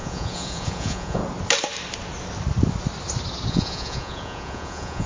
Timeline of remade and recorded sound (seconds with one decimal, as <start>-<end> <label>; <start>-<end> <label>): 0.0-1.2 remade; 1.2-3.5 recorded; 3.5-5.1 remade